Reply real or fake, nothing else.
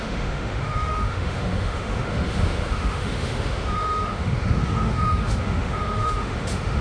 fake